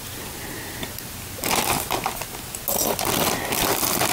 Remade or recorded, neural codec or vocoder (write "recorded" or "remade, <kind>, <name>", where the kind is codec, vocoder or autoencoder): recorded